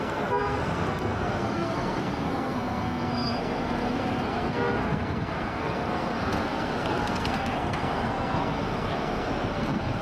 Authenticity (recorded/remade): remade